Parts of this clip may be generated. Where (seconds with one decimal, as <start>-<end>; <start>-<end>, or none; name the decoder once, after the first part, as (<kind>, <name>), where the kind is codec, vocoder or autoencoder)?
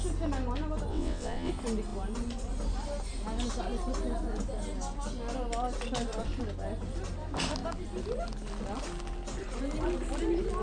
0.9-1.5 (vocoder, WaveNeXt)